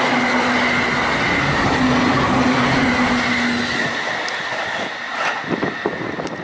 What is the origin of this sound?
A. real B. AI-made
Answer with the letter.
A